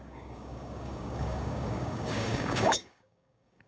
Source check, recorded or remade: remade